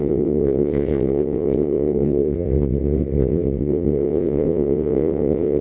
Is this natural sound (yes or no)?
no